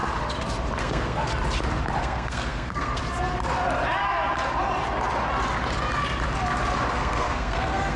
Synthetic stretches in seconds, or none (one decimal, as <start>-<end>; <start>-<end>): 0.8-1.3; 2.0-3.0; 6.9-8.0